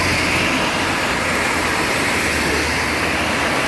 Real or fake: real